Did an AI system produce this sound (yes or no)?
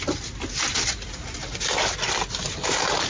no